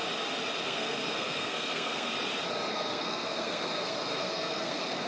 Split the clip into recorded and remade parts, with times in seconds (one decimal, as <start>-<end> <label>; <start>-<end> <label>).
0.0-0.6 recorded; 0.6-2.1 remade; 2.1-2.7 recorded; 2.7-5.1 remade